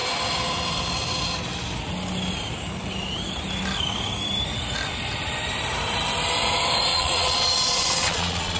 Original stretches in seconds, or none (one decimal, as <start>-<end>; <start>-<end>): 0.0-6.9